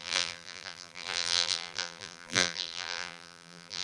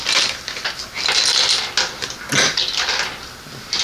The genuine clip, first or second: second